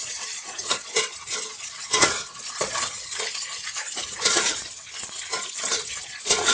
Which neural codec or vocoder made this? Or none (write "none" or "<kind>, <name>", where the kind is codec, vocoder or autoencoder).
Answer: vocoder, Vocos